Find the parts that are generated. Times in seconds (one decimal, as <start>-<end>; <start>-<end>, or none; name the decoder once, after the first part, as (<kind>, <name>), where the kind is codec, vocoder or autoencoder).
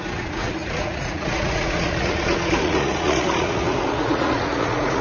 0.0-5.0 (vocoder, Vocos)